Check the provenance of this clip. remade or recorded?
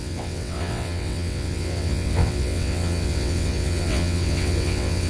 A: remade